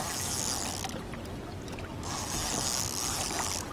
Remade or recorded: recorded